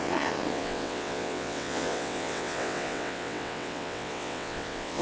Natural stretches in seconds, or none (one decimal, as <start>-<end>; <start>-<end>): none